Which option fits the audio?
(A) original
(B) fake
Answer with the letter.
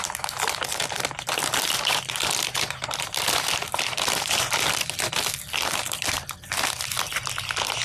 B